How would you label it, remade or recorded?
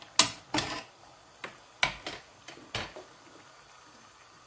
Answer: recorded